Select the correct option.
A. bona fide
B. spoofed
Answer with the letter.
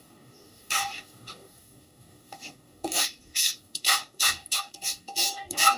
B